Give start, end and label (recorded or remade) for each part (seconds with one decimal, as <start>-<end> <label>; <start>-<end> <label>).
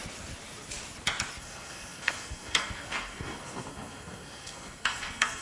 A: 0.0-1.4 recorded; 1.4-5.4 remade